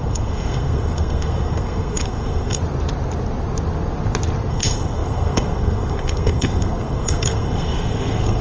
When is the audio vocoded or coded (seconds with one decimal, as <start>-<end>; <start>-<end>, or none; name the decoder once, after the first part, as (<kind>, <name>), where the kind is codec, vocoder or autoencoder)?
0.0-2.6 (codec, SNAC); 4.5-8.4